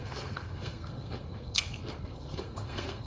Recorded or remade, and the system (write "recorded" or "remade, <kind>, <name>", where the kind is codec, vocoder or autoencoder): remade, codec, SNAC